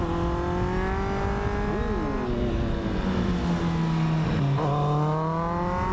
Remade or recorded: recorded